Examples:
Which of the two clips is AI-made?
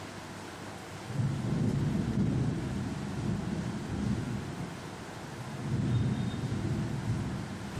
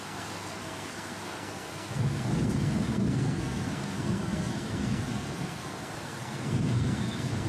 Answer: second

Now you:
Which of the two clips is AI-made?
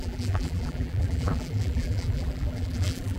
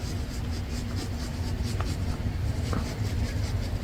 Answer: first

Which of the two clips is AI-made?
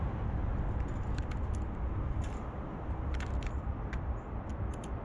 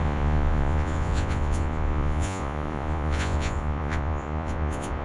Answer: second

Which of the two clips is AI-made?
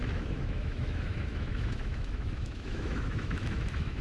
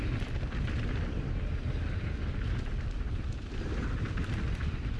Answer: first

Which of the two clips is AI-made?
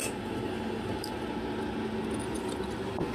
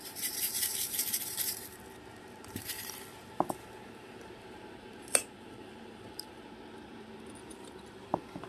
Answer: second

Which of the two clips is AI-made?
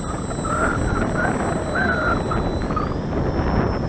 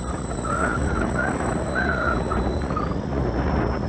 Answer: second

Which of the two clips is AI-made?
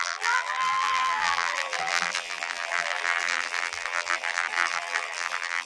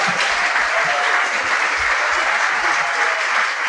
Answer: first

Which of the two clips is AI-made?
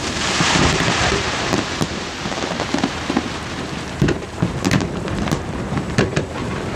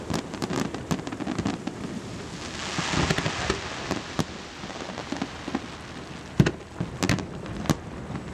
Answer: first